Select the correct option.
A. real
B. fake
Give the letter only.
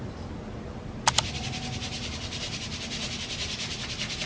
A